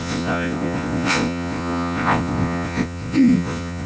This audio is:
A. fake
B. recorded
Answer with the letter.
A